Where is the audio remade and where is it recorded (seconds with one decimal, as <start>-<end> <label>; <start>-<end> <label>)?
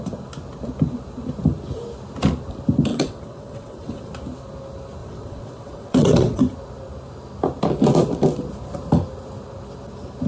0.0-2.9 recorded; 2.9-4.1 remade; 4.1-5.0 recorded; 5.0-6.4 remade; 6.4-10.3 recorded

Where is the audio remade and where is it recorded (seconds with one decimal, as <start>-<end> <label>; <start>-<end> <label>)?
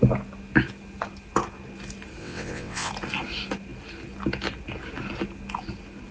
0.0-2.2 recorded; 2.2-2.9 remade; 2.9-6.1 recorded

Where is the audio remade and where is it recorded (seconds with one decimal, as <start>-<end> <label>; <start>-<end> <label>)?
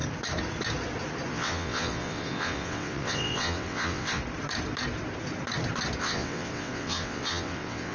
0.0-1.3 recorded; 1.3-4.2 remade; 4.2-6.0 recorded; 6.0-7.9 remade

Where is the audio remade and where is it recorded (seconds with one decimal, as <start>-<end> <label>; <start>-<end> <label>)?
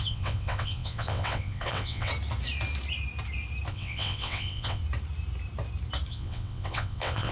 0.0-2.1 remade; 2.1-3.7 recorded; 3.7-4.8 remade; 4.8-6.1 recorded; 6.1-7.3 remade